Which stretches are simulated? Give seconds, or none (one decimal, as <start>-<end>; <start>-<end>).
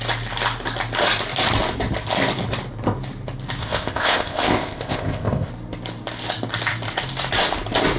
3.6-5.5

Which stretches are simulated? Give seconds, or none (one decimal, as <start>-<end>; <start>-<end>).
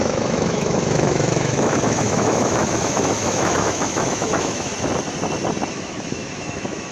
0.0-4.7; 5.7-6.9